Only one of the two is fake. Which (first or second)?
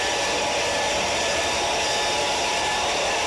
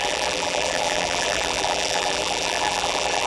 second